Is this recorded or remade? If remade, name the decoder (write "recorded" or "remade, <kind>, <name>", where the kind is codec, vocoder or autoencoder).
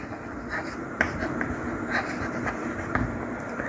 recorded